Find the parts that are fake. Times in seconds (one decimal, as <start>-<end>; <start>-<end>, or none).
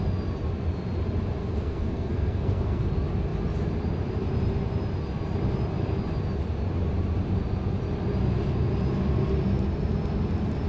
1.4-2.8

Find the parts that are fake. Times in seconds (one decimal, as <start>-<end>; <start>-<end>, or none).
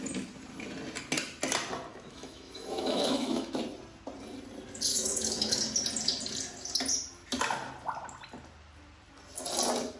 1.9-3.6; 4.9-5.6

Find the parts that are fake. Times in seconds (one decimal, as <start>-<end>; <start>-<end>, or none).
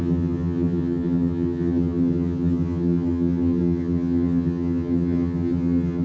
0.0-6.0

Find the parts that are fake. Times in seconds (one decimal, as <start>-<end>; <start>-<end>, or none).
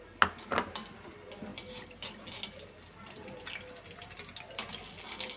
none